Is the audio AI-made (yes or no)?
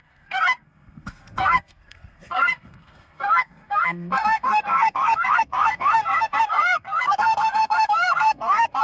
yes